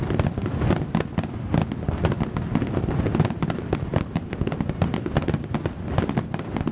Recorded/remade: recorded